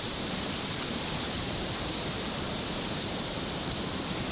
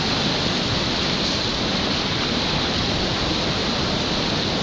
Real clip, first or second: second